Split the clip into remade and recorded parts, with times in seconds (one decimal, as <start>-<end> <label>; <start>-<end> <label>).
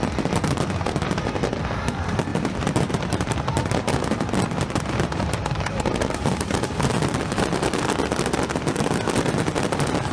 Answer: 0.0-2.3 recorded; 2.3-4.0 remade; 4.0-10.1 recorded